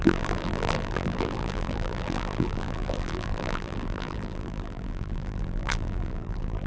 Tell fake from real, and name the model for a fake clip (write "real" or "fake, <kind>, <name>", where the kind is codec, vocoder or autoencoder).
fake, vocoder, BigVGAN v2